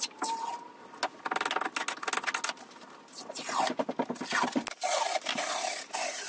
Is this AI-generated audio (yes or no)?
no